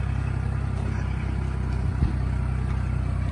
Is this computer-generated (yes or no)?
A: no